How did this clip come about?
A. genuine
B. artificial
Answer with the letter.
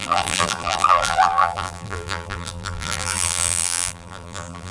B